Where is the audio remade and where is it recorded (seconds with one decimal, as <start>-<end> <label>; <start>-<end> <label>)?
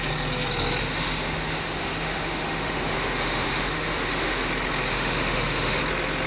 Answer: 0.0-0.8 recorded; 0.8-4.5 remade; 4.5-4.9 recorded; 4.9-5.8 remade; 5.8-6.3 recorded